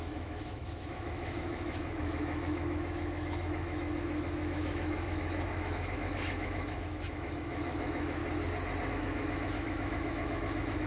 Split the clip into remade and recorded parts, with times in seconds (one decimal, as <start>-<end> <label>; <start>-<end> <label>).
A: 0.0-8.2 remade; 8.2-8.9 recorded; 8.9-10.9 remade